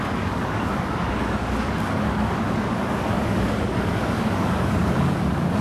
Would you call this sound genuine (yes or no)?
no